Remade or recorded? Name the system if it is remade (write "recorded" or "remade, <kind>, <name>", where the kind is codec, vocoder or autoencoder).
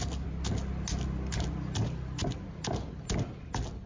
recorded